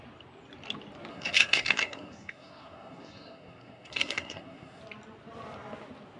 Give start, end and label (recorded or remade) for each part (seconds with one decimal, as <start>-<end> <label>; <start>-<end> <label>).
0.0-1.1 recorded; 1.1-4.8 remade; 4.8-6.2 recorded